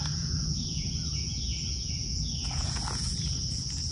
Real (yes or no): no